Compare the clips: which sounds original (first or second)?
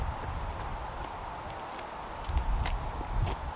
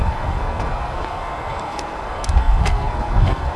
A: first